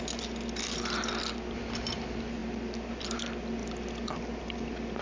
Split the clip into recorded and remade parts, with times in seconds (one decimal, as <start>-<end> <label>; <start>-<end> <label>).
0.0-5.0 recorded